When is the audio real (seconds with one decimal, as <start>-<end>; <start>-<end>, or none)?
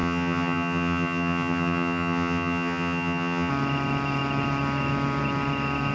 3.5-5.9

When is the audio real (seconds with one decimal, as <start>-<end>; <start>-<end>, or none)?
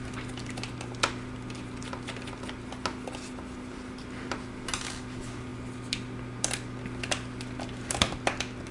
0.0-8.7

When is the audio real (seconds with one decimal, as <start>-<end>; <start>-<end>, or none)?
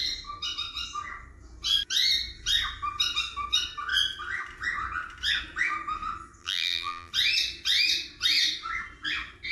0.0-6.4; 7.1-9.5